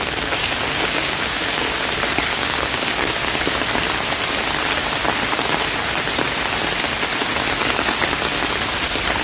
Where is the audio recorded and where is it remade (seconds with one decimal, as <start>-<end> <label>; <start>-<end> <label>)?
0.0-0.4 recorded; 0.4-1.9 remade; 1.9-2.3 recorded; 2.3-3.3 remade; 3.3-9.2 recorded